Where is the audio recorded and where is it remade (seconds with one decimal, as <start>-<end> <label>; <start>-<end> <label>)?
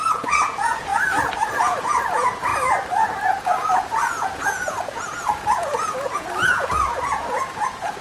0.0-0.9 remade; 0.9-1.6 recorded; 1.6-2.5 remade; 2.5-3.4 recorded; 3.4-8.0 remade